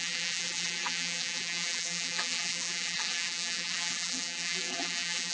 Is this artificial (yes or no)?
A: yes